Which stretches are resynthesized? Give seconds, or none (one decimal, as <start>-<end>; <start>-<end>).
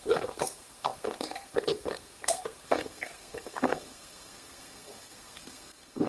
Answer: 0.0-6.1